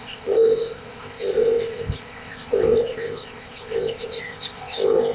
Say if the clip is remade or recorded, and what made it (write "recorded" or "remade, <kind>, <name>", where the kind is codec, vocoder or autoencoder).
remade, codec, ZipCodec